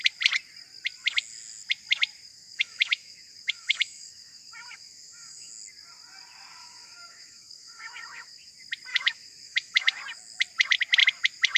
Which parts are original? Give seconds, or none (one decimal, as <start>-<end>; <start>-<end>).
0.0-2.3; 5.5-6.6; 8.5-8.9; 10.0-11.6